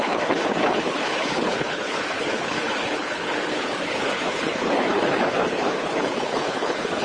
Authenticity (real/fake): fake